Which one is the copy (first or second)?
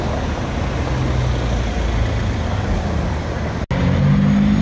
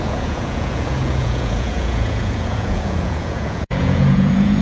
second